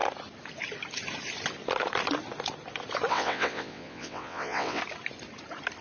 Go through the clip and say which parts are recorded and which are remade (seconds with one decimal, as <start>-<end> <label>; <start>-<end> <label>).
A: 0.0-3.1 recorded; 3.1-4.8 remade; 4.8-5.8 recorded